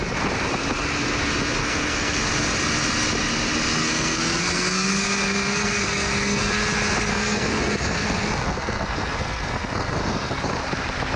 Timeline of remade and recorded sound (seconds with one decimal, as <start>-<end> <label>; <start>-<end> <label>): 0.0-1.6 recorded; 1.6-2.3 remade; 2.3-3.8 recorded; 3.8-6.5 remade; 6.5-7.1 recorded; 7.1-10.4 remade; 10.4-11.2 recorded